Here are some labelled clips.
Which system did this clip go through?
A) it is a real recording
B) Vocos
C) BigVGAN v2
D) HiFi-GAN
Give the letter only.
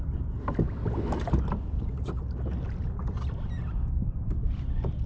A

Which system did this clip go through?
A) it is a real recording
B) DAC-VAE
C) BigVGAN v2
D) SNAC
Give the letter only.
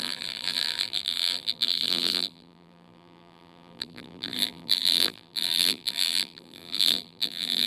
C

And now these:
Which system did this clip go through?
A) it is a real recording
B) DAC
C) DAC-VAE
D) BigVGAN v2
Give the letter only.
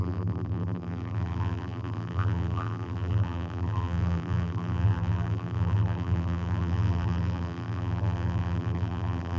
D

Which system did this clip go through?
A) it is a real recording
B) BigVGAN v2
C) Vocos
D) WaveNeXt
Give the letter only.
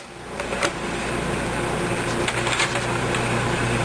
A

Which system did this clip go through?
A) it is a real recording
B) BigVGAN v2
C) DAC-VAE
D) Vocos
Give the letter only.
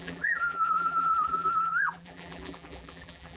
B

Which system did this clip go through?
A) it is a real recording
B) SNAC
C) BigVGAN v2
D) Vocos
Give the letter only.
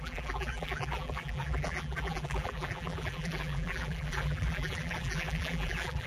C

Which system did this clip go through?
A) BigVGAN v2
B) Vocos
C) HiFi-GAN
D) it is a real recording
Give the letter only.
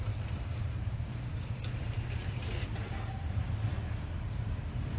A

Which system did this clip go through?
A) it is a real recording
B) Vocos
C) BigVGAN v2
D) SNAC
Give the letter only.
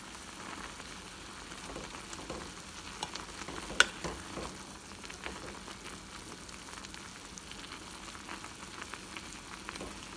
A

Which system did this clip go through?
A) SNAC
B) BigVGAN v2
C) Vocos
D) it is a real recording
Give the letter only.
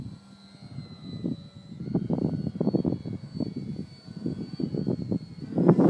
D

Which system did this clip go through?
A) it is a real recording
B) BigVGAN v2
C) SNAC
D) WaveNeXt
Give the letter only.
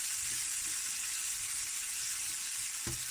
A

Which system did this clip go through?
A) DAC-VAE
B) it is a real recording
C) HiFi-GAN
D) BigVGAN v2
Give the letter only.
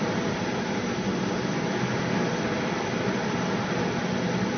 B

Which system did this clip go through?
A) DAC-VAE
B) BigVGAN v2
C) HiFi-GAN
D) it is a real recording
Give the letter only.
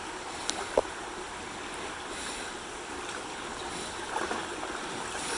B